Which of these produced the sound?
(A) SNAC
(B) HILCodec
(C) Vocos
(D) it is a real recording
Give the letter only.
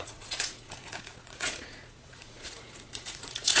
C